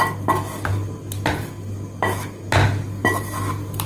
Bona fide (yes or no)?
yes